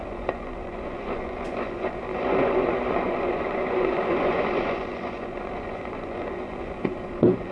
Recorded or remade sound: remade